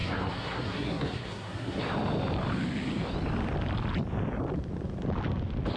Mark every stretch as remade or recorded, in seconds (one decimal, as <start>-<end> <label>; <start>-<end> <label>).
0.0-1.8 remade; 1.8-5.8 recorded